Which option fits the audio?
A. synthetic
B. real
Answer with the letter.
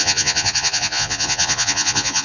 A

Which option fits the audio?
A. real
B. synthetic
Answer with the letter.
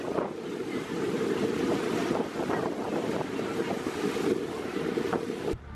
A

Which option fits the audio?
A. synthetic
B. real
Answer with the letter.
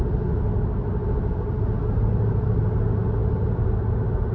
B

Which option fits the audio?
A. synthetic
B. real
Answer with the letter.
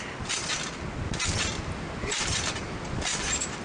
B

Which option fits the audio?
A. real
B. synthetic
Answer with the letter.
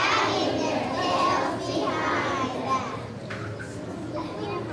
A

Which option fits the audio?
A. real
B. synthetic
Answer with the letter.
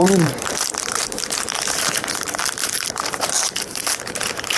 B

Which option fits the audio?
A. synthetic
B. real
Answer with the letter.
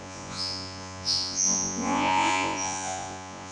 A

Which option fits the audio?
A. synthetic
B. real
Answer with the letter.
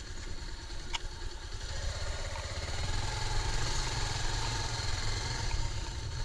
A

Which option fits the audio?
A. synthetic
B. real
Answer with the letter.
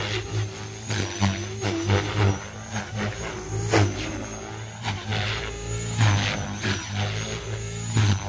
B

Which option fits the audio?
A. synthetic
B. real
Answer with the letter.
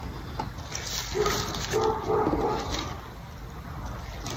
B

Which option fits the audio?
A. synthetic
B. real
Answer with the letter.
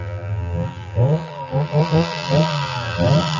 A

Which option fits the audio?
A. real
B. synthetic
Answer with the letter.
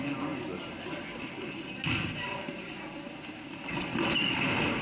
A